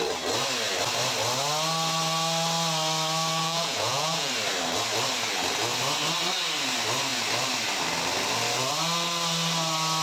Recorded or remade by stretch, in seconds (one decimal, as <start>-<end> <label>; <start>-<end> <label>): 0.0-3.4 recorded; 3.4-4.3 remade; 4.3-10.0 recorded